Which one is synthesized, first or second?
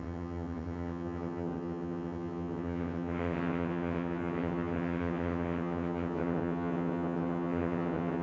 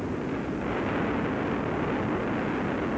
first